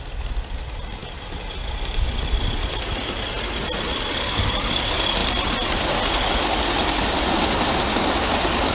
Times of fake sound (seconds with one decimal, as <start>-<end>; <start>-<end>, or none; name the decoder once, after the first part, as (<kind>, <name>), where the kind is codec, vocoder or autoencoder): 5.2-5.9 (vocoder, BigVGAN v2)